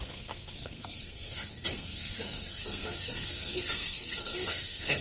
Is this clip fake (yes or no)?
yes